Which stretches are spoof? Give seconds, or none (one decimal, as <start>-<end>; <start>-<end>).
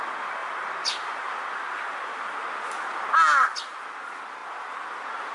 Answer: none